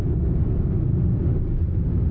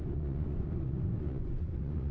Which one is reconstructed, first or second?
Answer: second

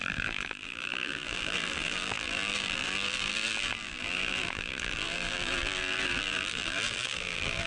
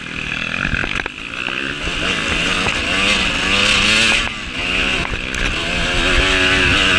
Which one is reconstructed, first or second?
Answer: first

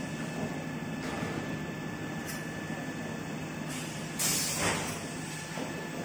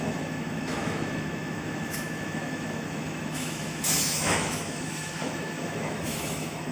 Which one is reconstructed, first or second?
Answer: second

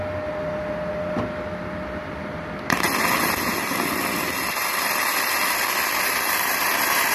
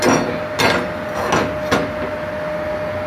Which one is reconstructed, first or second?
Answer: first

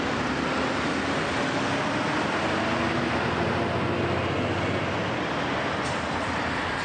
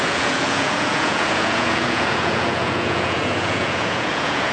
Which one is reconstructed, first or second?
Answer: second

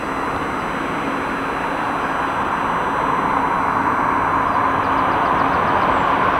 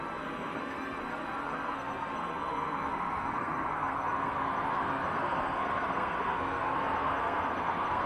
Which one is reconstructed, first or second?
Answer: second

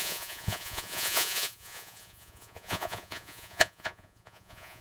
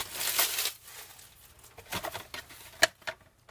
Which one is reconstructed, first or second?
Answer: first